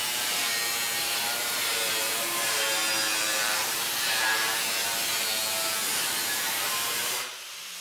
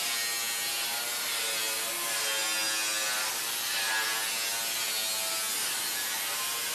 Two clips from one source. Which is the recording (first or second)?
second